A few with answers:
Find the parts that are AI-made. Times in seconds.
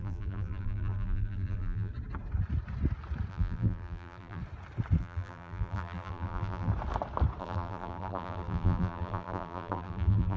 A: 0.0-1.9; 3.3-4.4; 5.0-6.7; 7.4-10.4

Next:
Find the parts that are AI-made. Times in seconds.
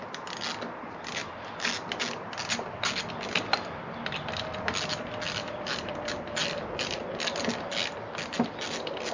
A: 5.4-5.9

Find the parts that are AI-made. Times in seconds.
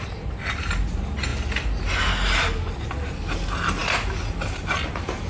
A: none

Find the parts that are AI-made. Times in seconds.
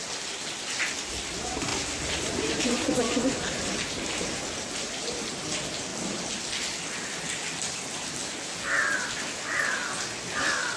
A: none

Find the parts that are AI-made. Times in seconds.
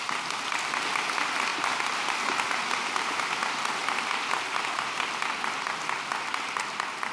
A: 1.5-2.2; 3.8-5.0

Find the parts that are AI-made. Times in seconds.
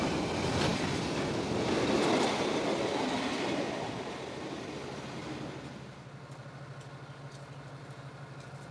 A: none